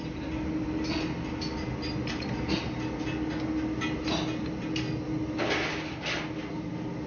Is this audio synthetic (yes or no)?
no